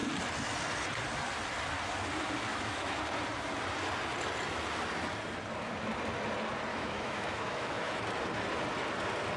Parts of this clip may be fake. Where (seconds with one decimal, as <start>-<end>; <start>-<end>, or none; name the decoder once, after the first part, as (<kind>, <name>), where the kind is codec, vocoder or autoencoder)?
2.5-3.0 (autoencoder, DAC-VAE); 6.7-8.0